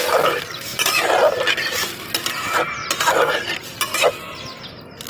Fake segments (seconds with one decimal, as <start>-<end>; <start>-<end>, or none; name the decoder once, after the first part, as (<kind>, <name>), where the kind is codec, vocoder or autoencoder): none